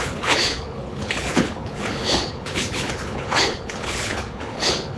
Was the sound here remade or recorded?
remade